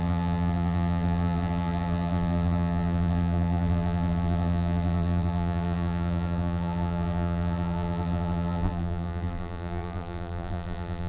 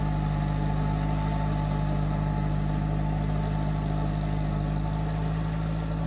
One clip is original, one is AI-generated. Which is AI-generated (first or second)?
first